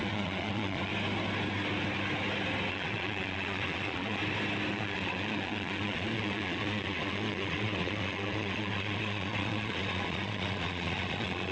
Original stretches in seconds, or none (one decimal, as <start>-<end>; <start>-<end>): 0.9-2.7; 4.2-4.7